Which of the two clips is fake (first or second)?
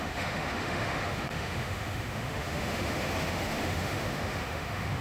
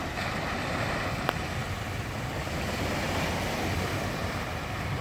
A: first